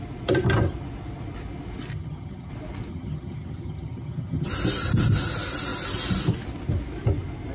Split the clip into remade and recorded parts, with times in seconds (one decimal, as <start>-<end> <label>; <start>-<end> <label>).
0.0-1.9 recorded; 1.9-2.5 remade; 2.5-2.9 recorded; 2.9-4.5 remade; 4.5-7.5 recorded